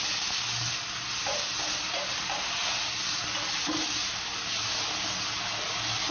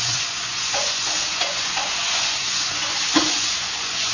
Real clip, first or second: first